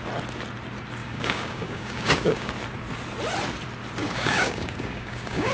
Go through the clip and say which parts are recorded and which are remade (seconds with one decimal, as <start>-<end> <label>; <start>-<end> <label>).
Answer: 0.0-1.0 recorded; 1.0-2.5 remade; 2.5-4.0 recorded; 4.0-5.5 remade